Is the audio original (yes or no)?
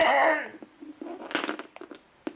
yes